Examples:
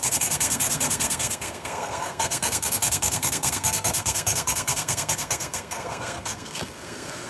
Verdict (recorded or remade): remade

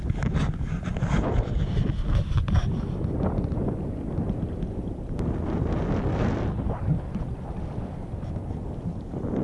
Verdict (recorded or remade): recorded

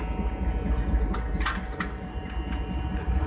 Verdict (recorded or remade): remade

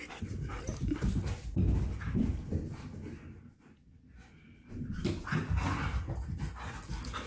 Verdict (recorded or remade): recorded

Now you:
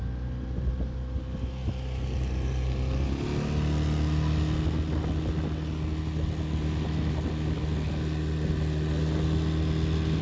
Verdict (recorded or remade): recorded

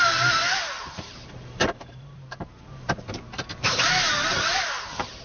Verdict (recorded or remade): remade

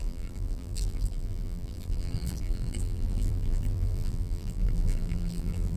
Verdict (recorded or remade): remade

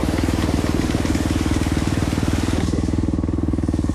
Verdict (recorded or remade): remade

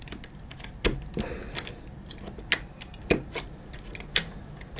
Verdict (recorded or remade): recorded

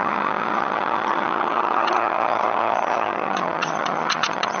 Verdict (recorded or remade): remade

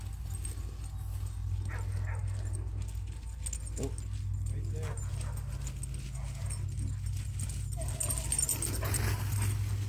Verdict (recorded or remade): recorded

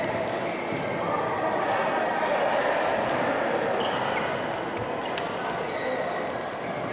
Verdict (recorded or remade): recorded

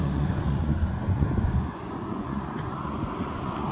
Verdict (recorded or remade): remade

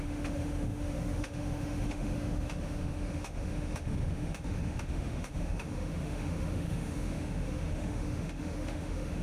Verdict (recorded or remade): remade